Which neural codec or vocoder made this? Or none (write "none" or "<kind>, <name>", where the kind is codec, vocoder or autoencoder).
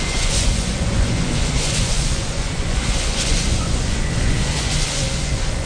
vocoder, Vocos